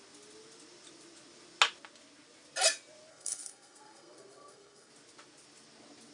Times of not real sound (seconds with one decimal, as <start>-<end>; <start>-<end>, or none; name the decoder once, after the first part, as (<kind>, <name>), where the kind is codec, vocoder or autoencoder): 3.1-4.9 (codec, SNAC)